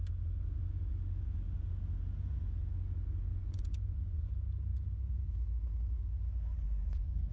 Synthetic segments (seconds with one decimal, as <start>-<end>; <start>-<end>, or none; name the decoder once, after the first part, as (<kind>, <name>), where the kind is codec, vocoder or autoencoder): 3.3-4.3 (vocoder, Vocos); 6.5-7.3